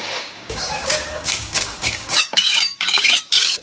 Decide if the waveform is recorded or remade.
remade